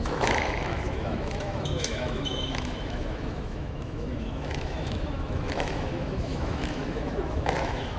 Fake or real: fake